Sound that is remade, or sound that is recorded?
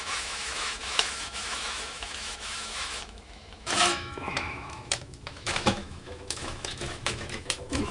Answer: remade